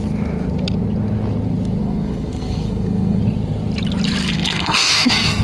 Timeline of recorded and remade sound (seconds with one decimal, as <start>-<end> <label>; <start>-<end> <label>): 0.0-1.8 recorded; 1.8-3.2 remade; 3.2-4.2 recorded; 4.2-5.4 remade